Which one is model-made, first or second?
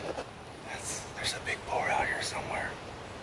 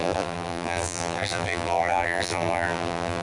second